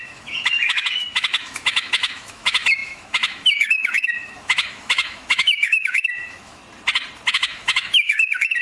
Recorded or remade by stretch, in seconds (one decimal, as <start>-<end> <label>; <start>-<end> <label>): 0.0-6.6 remade; 6.6-7.3 recorded; 7.3-8.6 remade